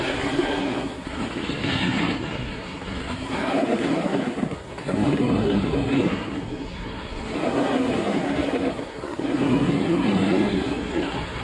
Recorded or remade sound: remade